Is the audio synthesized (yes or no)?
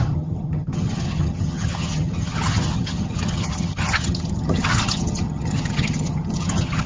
yes